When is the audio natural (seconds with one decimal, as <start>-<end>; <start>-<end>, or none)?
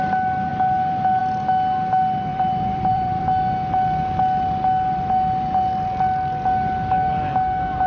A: 0.0-2.3; 3.2-7.9